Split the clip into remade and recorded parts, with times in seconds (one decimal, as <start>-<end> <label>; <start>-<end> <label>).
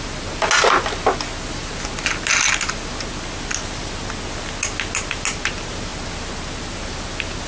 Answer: 0.0-7.5 recorded